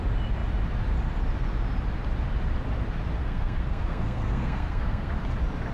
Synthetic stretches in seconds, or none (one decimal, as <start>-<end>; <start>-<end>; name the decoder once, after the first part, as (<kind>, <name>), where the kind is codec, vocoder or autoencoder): 3.2-5.1 (codec, SNAC)